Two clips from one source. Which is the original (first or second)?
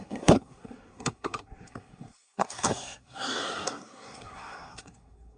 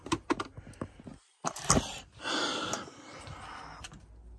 second